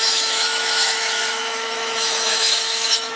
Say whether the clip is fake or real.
fake